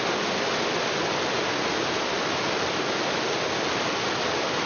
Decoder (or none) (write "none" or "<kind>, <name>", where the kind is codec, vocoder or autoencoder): none